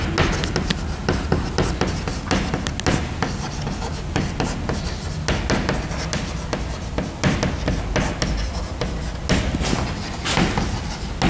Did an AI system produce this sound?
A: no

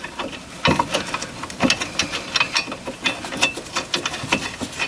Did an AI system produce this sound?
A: no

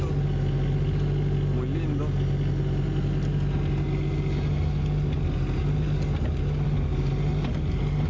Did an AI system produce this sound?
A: no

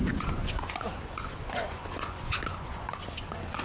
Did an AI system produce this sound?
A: yes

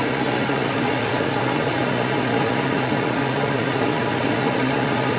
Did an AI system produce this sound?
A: yes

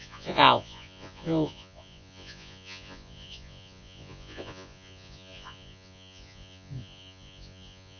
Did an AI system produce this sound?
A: yes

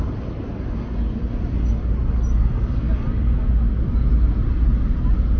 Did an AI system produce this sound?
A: no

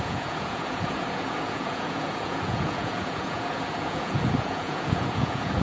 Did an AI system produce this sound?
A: yes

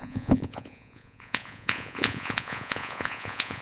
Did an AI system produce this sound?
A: yes